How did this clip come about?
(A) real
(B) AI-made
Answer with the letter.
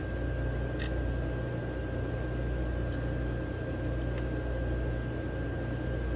A